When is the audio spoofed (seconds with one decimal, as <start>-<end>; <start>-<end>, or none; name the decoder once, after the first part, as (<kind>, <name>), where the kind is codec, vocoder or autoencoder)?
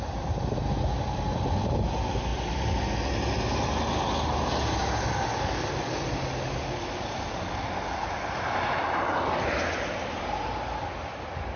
none